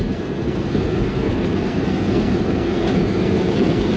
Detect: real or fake fake